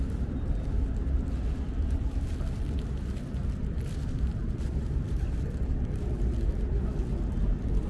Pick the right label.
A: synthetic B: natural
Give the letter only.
A